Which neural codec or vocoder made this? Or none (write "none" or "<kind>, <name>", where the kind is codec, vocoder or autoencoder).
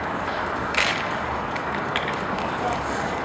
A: codec, DAC